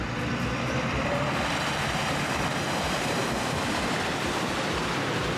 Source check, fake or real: fake